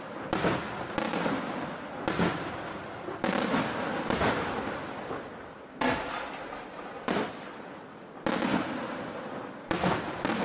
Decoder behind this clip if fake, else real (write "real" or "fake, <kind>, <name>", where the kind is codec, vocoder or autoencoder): real